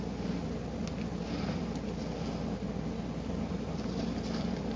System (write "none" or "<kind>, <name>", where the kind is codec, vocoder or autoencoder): none